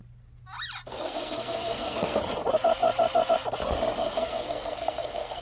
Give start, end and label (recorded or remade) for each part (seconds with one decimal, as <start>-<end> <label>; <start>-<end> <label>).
0.0-0.9 recorded; 0.9-2.2 remade; 2.2-4.0 recorded; 4.0-5.4 remade